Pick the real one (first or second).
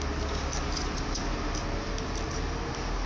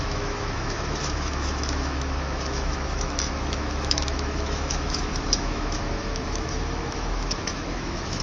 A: first